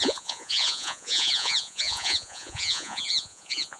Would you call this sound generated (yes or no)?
yes